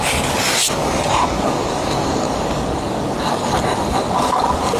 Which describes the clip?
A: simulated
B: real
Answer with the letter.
A